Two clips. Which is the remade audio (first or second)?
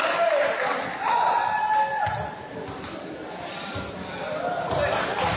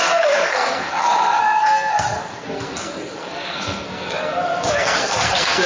second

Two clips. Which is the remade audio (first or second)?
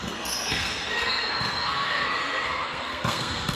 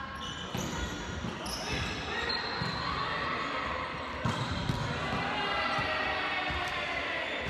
first